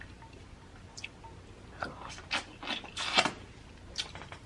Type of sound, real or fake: real